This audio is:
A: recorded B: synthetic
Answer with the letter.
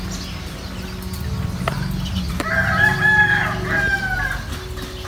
A